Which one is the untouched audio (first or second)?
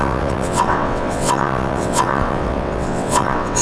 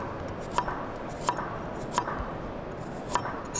second